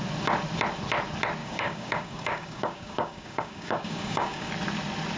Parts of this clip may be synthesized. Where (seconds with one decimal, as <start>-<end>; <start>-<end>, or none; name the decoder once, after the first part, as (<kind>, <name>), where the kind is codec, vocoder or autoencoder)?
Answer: 1.4-4.5 (codec, DAC)